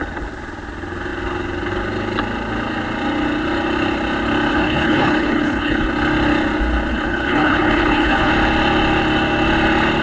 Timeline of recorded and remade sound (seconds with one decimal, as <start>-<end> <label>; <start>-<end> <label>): 0.0-4.5 recorded; 4.5-5.9 remade; 5.9-6.9 recorded; 6.9-8.3 remade; 8.3-10.0 recorded